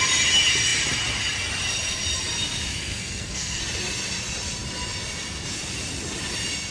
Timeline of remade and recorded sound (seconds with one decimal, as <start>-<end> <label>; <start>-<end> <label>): 0.0-2.8 recorded; 2.8-3.6 remade; 3.6-6.7 recorded